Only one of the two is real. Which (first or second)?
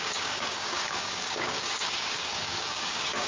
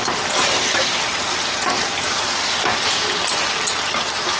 second